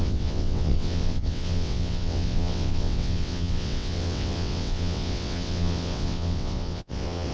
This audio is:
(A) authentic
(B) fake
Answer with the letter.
B